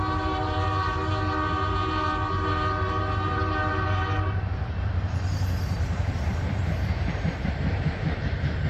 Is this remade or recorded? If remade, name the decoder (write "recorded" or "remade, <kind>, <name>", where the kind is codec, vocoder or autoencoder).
remade, vocoder, BigVGAN v2